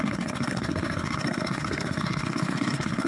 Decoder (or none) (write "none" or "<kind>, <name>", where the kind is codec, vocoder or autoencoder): codec, SNAC